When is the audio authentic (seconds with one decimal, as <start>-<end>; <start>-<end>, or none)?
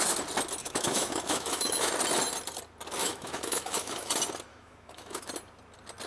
0.0-0.6; 1.9-3.0; 4.1-4.5; 5.3-6.1